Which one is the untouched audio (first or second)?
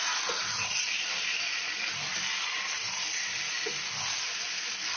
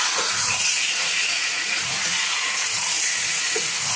first